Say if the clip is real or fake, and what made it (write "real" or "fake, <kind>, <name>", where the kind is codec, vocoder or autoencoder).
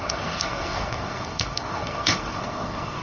fake, codec, SNAC